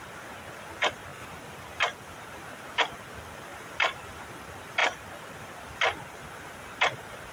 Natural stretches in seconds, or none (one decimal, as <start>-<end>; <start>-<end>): 0.0-3.5; 4.2-7.3